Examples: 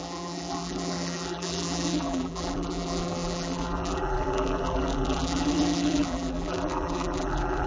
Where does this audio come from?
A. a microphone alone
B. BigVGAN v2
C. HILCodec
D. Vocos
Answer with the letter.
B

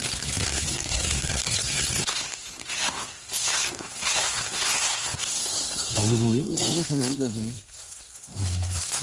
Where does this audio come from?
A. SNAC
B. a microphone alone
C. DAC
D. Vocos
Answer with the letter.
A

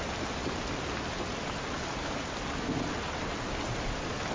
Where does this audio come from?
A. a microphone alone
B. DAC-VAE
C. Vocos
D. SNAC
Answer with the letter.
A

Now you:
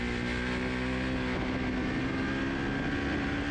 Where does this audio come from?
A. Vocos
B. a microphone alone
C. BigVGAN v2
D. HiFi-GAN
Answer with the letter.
B